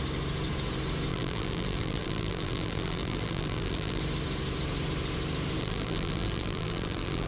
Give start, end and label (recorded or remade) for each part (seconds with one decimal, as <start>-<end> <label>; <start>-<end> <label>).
0.0-1.1 recorded; 1.1-4.0 remade; 4.0-5.6 recorded; 5.6-7.3 remade